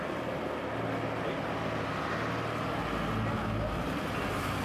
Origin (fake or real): real